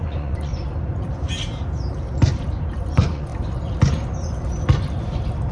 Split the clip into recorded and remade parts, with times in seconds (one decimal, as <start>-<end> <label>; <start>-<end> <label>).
0.0-0.5 remade; 0.5-2.9 recorded; 2.9-3.3 remade; 3.3-5.5 recorded